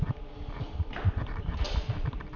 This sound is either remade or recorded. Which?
remade